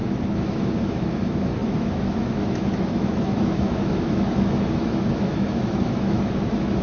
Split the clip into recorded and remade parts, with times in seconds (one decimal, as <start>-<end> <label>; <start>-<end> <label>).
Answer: 0.0-6.8 remade